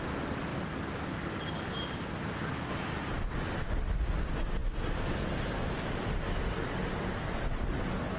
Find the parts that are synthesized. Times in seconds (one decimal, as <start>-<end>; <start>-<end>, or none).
none